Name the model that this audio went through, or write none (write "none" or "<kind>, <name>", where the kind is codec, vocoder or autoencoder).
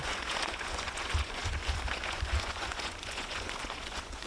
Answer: vocoder, Vocos